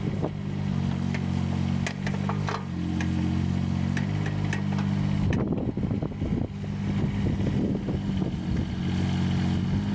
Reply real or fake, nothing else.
real